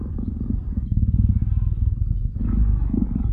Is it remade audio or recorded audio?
recorded